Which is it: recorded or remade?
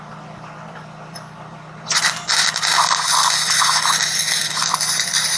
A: recorded